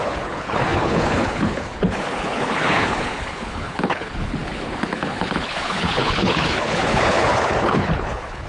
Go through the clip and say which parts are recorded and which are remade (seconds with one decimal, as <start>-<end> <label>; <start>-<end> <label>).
0.0-8.5 remade